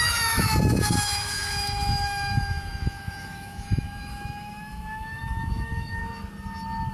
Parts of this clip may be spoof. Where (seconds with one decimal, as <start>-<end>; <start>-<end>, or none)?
0.0-6.0